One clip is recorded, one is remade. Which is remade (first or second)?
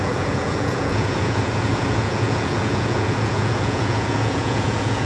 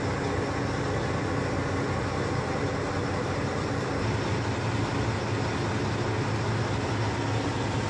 first